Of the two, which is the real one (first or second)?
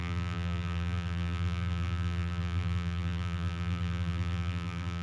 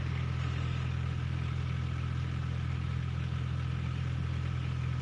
second